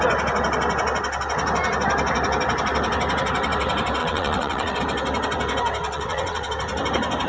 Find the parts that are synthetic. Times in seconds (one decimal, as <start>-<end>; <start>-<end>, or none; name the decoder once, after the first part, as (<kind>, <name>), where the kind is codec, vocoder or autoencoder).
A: 4.0-4.8 (vocoder, WaveNeXt); 5.8-6.5